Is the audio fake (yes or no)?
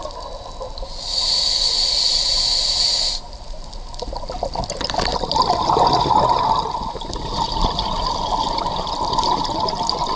no